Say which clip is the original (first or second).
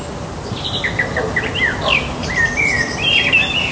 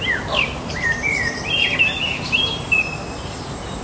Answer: first